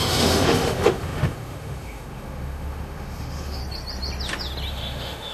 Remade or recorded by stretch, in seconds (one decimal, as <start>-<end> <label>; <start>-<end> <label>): 0.0-3.6 remade; 3.6-4.7 recorded; 4.7-5.3 remade